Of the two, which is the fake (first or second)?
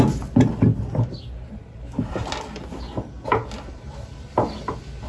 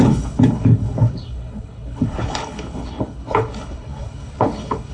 second